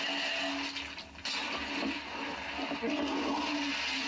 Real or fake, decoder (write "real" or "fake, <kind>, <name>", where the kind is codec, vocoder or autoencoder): real